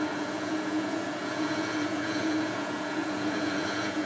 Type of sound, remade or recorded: remade